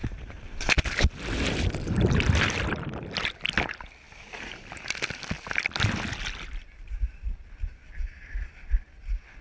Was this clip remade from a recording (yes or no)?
no